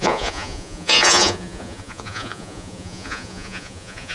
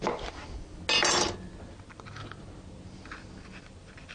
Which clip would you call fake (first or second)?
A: first